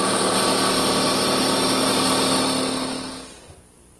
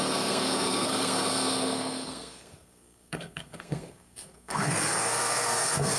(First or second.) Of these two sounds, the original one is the first